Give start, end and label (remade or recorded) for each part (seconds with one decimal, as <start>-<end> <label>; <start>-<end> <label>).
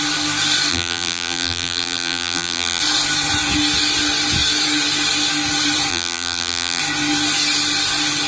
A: 0.0-0.7 recorded; 0.7-2.8 remade; 2.8-5.9 recorded; 5.9-6.8 remade; 6.8-8.3 recorded